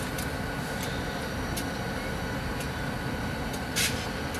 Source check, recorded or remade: recorded